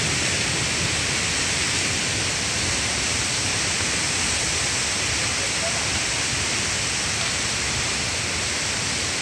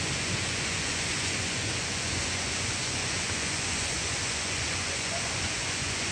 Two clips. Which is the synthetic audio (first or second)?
second